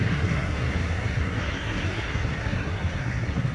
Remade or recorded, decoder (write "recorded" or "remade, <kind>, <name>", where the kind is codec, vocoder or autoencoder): remade, codec, SNAC